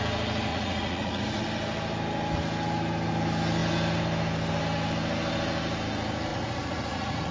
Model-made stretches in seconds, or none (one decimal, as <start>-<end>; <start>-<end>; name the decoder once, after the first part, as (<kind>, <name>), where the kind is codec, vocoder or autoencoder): 0.5-1.4 (vocoder, Vocos); 6.3-7.3